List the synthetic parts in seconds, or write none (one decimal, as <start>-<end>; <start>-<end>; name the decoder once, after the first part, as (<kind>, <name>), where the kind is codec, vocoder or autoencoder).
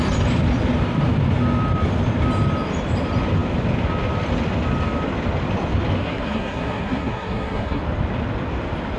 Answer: 6.0-7.8 (codec, SNAC)